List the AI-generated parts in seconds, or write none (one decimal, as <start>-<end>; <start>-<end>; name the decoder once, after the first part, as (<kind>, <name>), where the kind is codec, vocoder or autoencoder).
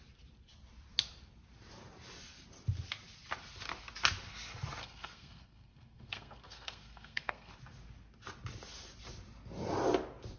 4.8-7.5 (codec, SNAC)